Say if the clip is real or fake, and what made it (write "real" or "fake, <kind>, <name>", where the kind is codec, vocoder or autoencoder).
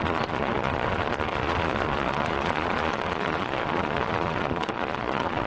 fake, vocoder, Vocos